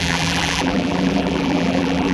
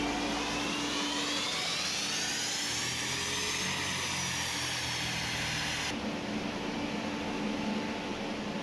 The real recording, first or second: second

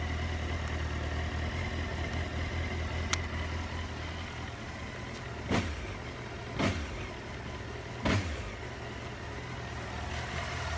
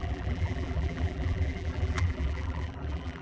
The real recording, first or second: first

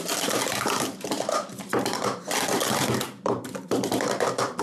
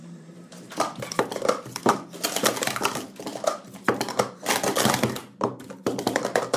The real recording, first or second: second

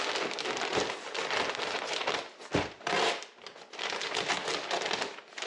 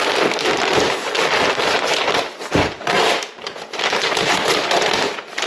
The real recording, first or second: first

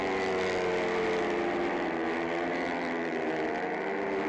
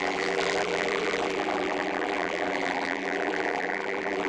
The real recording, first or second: first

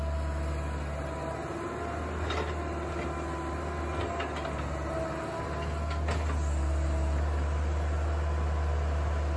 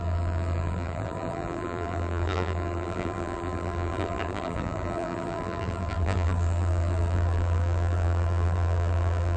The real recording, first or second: first